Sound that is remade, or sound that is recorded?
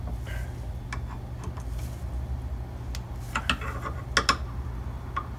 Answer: recorded